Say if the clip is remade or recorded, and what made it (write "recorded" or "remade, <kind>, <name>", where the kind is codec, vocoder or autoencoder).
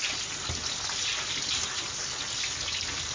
recorded